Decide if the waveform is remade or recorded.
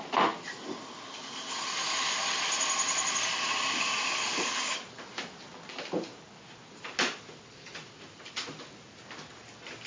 recorded